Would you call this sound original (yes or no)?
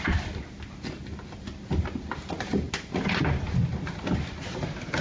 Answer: yes